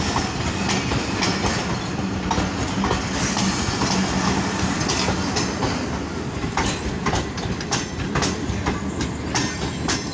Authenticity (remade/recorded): recorded